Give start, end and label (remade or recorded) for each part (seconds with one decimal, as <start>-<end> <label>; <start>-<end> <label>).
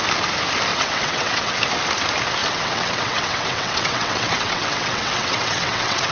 0.0-0.7 recorded; 0.7-1.6 remade; 1.6-2.4 recorded; 2.4-6.1 remade